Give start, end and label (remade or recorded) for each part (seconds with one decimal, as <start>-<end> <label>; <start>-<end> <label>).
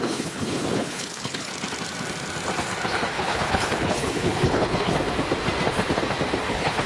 0.0-1.5 remade; 1.5-3.1 recorded; 3.1-4.9 remade; 4.9-6.5 recorded; 6.5-6.9 remade